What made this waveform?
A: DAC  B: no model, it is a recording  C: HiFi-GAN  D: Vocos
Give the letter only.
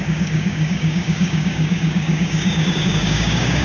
A